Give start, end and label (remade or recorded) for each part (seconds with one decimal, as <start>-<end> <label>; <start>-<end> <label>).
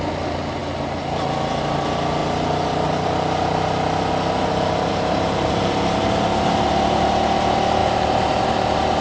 0.0-9.0 recorded